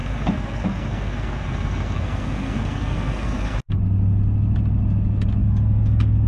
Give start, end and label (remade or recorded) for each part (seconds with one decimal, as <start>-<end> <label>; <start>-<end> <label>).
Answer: 0.0-3.8 remade; 3.8-5.4 recorded; 5.4-6.3 remade